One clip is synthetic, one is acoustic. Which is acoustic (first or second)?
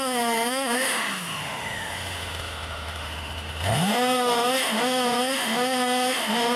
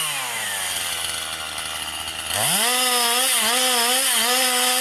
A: second